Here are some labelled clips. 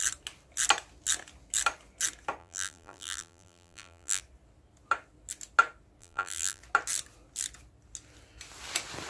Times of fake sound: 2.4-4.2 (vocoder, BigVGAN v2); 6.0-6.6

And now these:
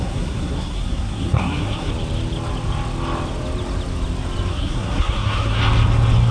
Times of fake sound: 0.0-1.9 (codec, SNAC); 4.5-5.6

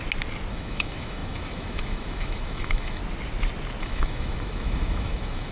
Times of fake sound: 0.5-3.0 (autoencoder, DAC-VAE); 3.8-5.5

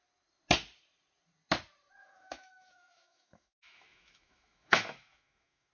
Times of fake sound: 2.0-5.7 (autoencoder, DAC-VAE)

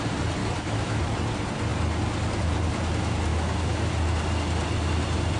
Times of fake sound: 0.4-1.0 (autoencoder, DAC-VAE); 3.3-3.9